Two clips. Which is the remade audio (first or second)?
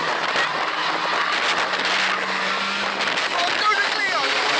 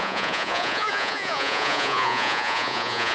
second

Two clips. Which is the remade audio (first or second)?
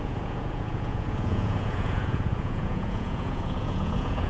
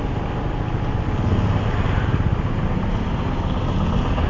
first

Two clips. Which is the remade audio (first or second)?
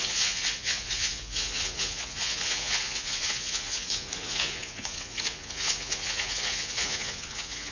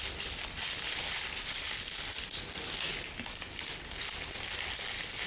first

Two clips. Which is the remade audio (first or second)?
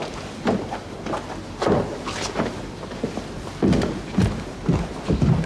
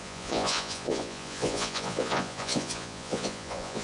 second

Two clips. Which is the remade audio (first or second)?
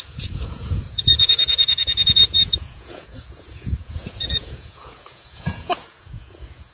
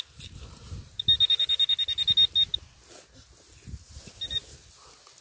first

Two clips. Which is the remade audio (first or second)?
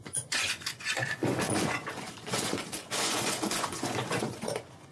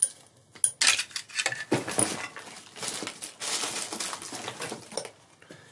first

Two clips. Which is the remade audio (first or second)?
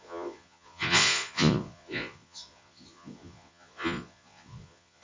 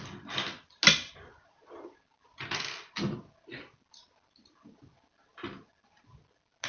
first